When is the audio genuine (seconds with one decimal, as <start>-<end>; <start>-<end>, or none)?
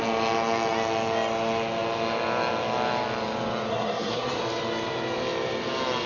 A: 0.0-3.7; 4.4-6.1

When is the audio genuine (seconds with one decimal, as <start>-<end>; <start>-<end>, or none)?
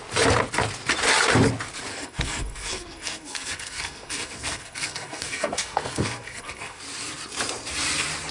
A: 0.0-1.9; 6.8-8.3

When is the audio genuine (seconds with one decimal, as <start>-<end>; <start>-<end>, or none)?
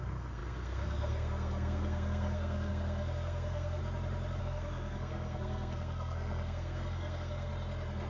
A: 3.8-4.4; 7.5-8.1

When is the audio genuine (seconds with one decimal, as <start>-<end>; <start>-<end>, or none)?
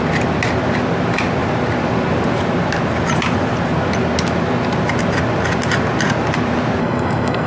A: 0.0-6.8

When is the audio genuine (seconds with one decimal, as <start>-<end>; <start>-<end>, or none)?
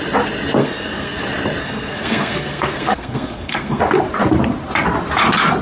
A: 0.0-0.6; 1.2-1.6; 3.8-5.6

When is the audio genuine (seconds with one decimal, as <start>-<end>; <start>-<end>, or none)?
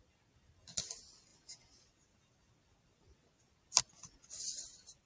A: 0.0-5.1